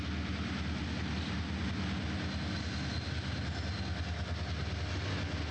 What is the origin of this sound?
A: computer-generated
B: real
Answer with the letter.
B